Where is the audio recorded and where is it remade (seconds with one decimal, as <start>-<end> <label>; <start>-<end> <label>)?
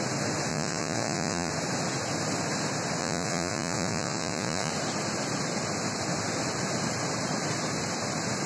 0.0-0.5 recorded; 0.5-1.5 remade; 1.5-3.0 recorded; 3.0-4.7 remade; 4.7-8.5 recorded